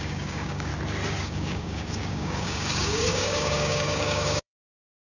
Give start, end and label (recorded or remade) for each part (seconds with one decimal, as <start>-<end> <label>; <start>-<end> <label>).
0.0-0.7 remade; 0.7-1.2 recorded; 1.2-5.1 remade